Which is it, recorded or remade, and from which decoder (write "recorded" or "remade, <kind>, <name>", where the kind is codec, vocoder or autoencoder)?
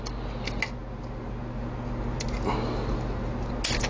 recorded